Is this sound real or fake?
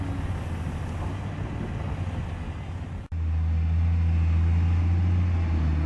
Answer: real